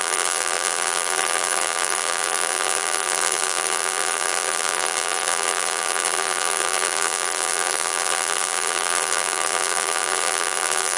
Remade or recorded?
remade